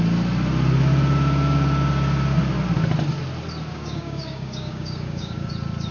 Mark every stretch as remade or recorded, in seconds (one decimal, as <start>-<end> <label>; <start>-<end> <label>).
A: 0.0-3.7 recorded; 3.7-5.5 remade; 5.5-5.9 recorded